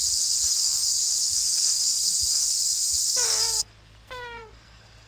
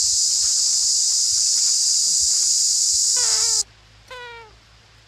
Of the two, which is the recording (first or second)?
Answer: second